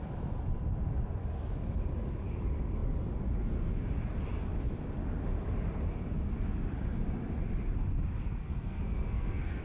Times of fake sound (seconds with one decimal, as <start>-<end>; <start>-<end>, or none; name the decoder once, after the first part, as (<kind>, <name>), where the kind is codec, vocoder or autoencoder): 8.4-9.6 (codec, SNAC)